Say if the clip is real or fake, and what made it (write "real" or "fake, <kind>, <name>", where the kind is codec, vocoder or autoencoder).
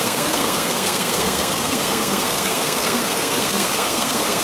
fake, codec, SNAC